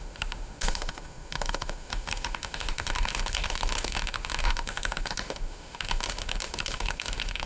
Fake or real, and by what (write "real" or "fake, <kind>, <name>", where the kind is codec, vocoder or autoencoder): fake, autoencoder, DAC-VAE